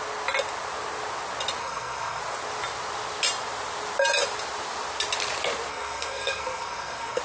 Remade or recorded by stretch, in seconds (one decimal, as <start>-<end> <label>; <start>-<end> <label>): 0.0-1.6 recorded; 1.6-2.2 remade; 2.2-5.7 recorded; 5.7-7.2 remade